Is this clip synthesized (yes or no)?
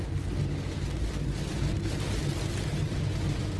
no